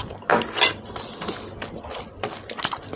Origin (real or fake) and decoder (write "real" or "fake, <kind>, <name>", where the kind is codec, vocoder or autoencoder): real